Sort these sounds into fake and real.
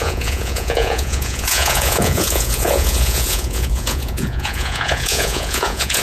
fake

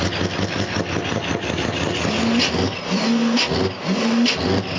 real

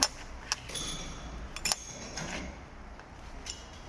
real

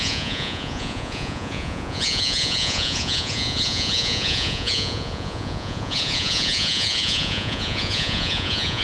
fake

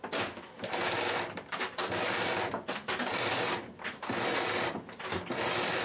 real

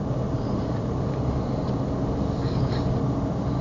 real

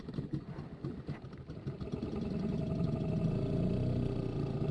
real